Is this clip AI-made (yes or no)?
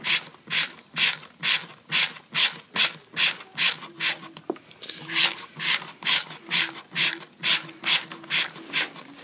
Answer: no